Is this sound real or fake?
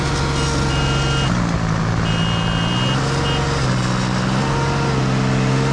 real